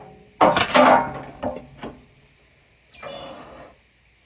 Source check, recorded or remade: recorded